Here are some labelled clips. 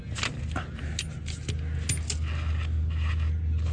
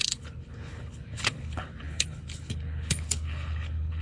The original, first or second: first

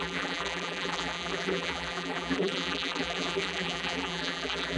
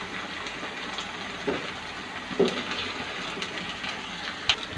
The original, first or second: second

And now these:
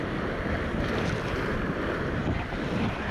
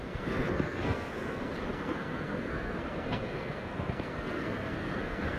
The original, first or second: first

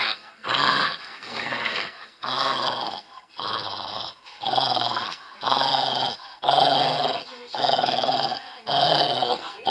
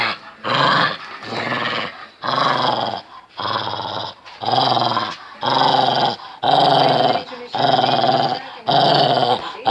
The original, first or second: second